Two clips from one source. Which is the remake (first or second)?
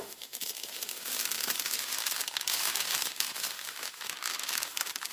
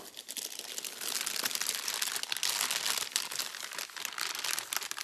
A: first